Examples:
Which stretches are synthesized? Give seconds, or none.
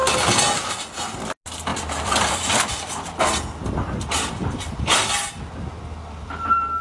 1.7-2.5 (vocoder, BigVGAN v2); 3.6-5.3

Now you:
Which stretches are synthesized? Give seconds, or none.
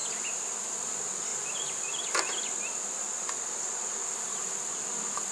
none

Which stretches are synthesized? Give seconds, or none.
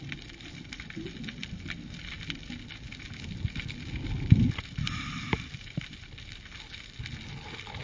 none